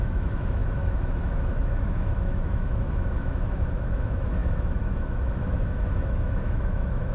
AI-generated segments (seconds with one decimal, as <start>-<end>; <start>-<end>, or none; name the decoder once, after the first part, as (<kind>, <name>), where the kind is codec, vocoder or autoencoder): 0.0-7.1 (autoencoder, DAC-VAE)